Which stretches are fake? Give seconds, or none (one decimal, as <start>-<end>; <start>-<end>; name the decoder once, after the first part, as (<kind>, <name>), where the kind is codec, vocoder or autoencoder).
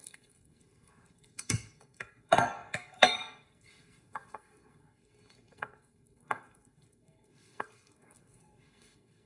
0.0-9.3 (codec, SNAC)